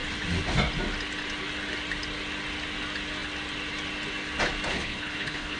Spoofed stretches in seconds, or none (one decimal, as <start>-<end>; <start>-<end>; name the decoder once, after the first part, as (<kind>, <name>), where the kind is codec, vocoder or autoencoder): 4.7-5.6 (codec, HILCodec)